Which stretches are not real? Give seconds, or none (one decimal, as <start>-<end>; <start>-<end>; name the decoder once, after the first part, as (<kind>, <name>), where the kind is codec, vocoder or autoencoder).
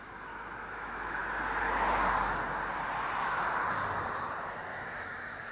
0.0-1.2 (autoencoder, DAC-VAE); 4.4-5.5